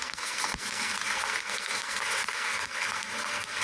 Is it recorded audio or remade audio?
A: remade